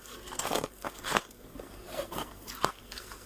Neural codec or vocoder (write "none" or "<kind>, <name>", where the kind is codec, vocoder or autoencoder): codec, SNAC